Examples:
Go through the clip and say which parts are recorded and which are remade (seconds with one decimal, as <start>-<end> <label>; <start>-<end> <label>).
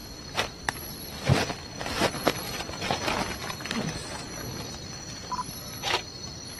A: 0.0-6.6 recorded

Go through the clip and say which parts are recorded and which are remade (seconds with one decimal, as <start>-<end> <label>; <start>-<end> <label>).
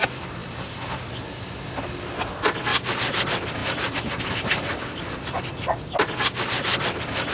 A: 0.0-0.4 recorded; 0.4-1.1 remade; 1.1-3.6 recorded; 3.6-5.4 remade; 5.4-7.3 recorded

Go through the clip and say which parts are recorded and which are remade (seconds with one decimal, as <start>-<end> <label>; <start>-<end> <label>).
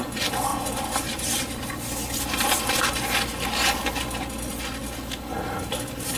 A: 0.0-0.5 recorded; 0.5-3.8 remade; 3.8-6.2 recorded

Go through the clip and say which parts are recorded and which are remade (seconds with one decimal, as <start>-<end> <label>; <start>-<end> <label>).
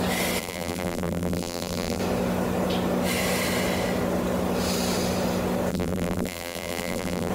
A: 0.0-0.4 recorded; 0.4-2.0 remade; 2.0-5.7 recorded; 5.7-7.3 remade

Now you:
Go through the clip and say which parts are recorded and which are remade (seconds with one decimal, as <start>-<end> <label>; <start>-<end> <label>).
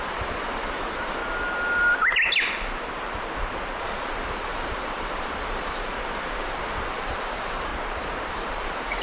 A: 0.0-1.2 remade; 1.2-3.8 recorded; 3.8-7.7 remade; 7.7-8.3 recorded; 8.3-9.0 remade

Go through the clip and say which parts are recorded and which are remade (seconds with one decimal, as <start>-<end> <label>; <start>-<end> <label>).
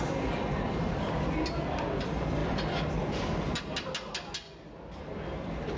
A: 0.0-5.8 recorded